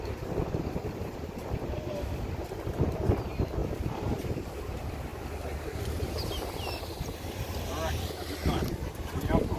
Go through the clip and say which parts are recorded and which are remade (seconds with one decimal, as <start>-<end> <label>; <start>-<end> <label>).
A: 0.0-5.1 remade; 5.1-7.9 recorded; 7.9-9.6 remade